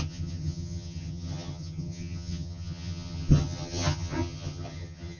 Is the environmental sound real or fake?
fake